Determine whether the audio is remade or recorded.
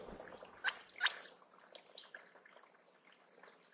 recorded